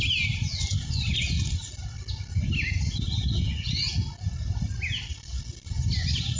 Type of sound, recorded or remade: recorded